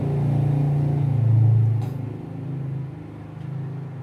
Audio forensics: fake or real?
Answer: real